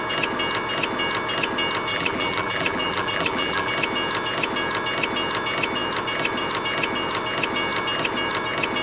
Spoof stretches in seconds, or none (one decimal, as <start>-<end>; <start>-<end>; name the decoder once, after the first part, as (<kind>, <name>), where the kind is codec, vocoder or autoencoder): 1.9-3.7 (vocoder, BigVGAN v2)